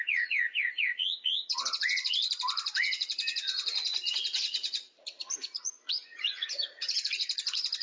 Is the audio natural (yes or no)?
no